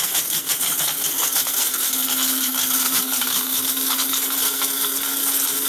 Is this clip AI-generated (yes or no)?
yes